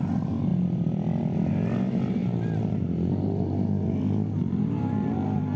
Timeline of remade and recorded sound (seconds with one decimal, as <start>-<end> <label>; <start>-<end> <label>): 0.0-5.6 recorded